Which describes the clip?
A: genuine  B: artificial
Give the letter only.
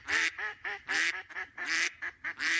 B